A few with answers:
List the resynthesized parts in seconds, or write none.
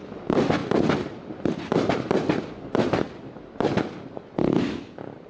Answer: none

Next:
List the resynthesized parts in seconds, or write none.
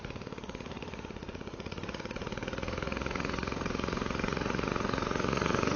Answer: 0.0-5.8 (vocoder, Vocos)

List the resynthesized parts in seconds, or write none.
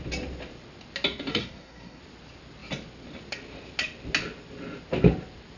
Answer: 1.3-2.0 (codec, SNAC)